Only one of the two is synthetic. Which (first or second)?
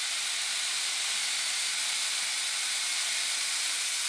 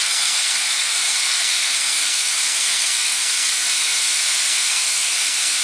second